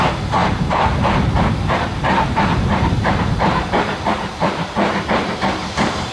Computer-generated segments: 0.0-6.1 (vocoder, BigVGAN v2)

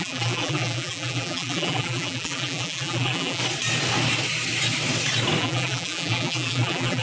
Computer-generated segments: 0.0-3.4 (vocoder, BigVGAN v2); 5.4-7.0

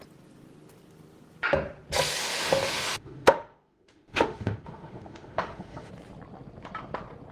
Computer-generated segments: 2.2-5.9 (autoencoder, DAC-VAE)